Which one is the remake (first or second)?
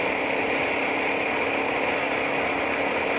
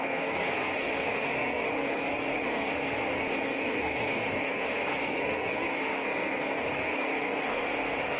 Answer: second